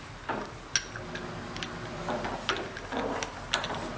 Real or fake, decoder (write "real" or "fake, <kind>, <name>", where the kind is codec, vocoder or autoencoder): real